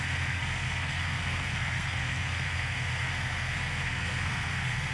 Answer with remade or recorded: remade